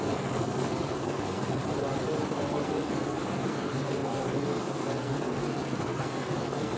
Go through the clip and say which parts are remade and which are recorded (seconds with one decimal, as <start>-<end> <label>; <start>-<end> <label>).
0.0-1.6 remade; 1.6-2.3 recorded; 2.3-6.8 remade